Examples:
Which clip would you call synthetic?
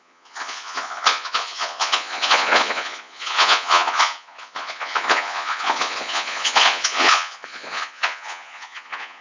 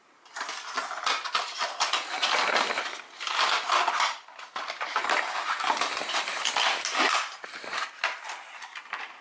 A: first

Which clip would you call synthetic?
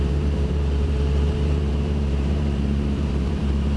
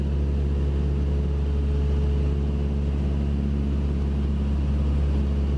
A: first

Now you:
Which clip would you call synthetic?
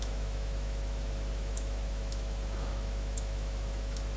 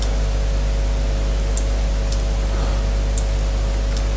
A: first